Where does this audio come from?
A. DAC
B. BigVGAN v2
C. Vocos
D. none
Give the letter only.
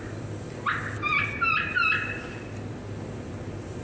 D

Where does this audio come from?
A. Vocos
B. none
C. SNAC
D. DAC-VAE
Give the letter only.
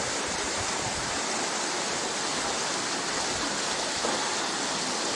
B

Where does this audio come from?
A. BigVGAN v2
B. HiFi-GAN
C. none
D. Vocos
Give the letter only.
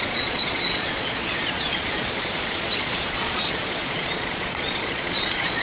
D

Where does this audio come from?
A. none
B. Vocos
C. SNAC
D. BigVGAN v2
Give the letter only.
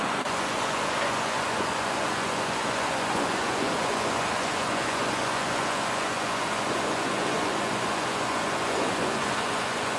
B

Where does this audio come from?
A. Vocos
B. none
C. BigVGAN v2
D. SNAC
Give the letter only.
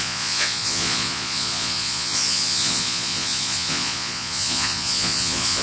A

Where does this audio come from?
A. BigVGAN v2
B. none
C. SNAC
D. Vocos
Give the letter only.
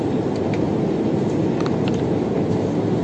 B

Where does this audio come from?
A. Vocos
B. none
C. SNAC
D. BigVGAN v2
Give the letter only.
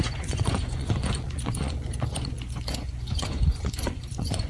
A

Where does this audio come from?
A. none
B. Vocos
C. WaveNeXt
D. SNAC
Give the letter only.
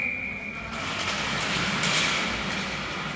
A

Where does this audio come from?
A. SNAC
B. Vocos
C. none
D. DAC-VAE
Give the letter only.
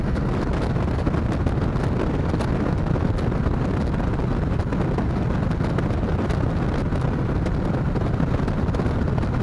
C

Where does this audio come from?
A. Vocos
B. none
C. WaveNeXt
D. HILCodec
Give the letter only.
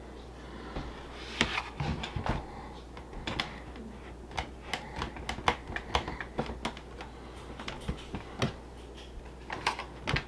B